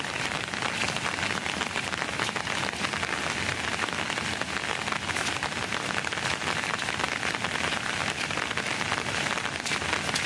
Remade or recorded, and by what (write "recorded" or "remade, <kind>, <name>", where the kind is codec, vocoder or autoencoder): recorded